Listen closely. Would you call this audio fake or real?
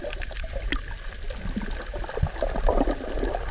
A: real